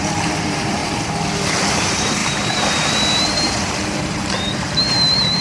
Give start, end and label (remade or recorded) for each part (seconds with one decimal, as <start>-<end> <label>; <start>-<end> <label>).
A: 0.0-5.4 remade